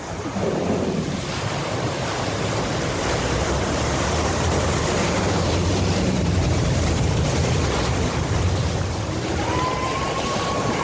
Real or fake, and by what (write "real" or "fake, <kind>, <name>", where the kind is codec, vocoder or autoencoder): fake, vocoder, BigVGAN v2